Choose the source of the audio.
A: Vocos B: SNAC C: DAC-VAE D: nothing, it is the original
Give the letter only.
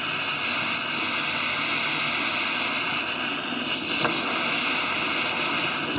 D